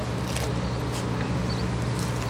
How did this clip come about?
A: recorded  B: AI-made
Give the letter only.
A